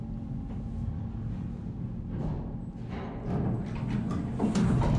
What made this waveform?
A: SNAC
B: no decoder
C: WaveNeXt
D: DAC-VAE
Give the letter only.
B